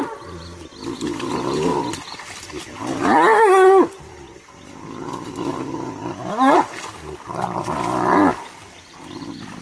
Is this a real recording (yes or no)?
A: yes